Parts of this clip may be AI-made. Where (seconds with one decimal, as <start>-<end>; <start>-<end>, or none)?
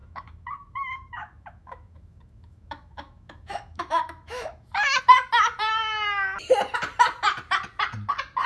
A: 0.0-5.0